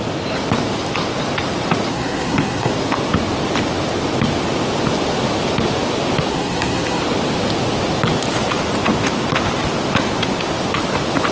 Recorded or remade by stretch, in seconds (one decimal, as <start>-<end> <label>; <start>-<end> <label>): 0.0-1.9 recorded; 1.9-2.7 remade; 2.7-6.3 recorded; 6.3-7.0 remade; 7.0-11.3 recorded